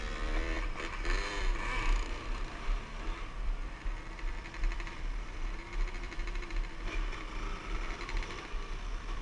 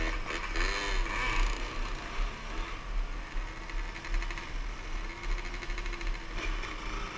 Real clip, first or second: second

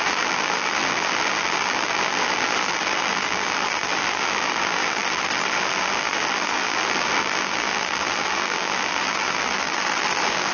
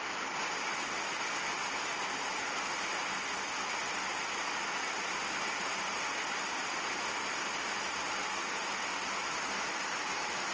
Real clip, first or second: second